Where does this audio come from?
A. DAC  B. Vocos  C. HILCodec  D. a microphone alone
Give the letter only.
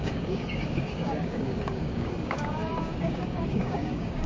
A